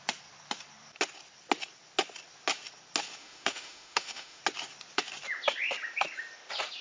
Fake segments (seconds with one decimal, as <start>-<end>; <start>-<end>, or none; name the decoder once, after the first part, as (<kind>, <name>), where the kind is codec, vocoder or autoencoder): 3.2-4.4 (autoencoder, DAC-VAE)